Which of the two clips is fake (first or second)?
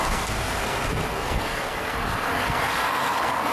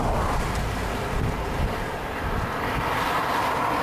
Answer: first